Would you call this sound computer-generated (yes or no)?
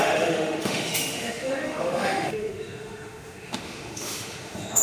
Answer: yes